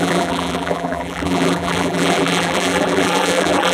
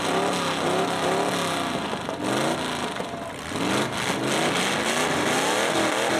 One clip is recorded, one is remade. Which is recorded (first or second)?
second